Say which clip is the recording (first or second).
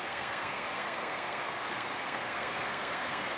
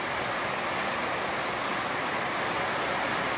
second